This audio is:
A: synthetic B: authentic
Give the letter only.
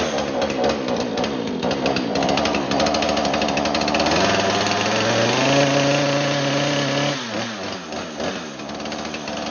B